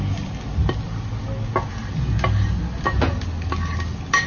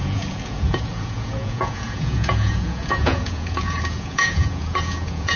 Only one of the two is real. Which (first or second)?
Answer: first